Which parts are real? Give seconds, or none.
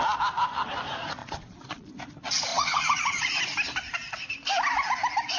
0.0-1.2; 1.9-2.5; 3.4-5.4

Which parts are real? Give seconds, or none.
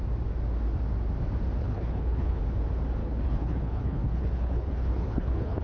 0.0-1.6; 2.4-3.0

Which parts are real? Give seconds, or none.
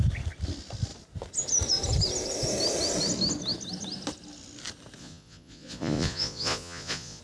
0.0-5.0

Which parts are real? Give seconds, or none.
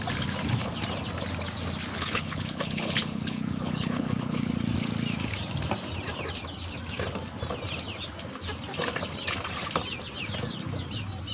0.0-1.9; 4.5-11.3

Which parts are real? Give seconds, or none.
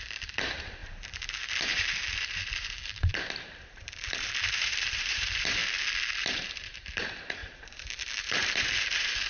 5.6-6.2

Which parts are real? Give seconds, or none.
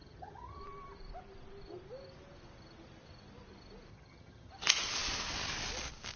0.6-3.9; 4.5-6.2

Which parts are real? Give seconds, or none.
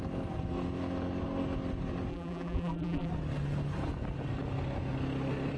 0.0-2.1; 3.1-5.6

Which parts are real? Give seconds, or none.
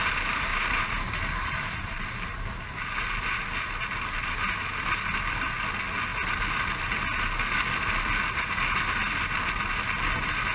0.0-0.5; 2.3-10.5